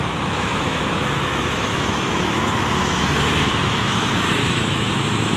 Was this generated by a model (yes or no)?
yes